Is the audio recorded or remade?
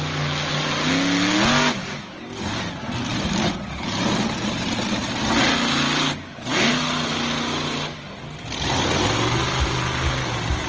recorded